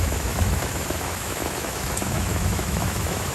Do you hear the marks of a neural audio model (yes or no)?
yes